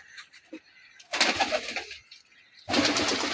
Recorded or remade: recorded